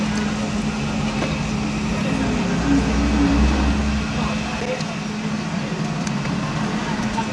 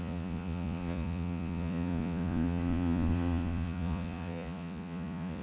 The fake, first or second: second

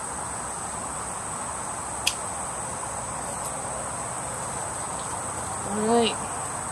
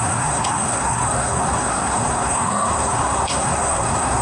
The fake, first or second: second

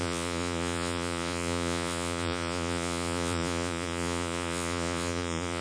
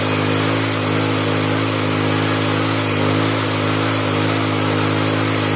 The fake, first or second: first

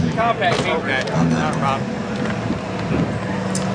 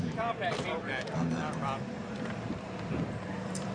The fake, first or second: second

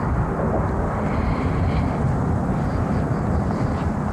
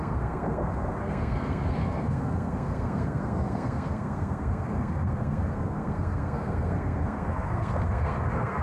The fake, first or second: second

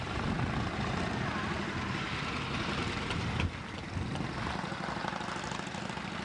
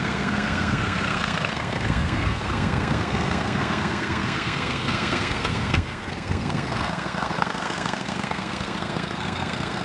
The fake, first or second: second